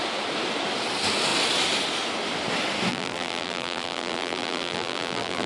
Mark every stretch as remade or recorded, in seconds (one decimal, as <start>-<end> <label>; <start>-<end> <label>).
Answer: 0.0-2.9 recorded; 2.9-5.5 remade